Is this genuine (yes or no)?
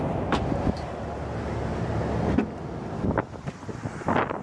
yes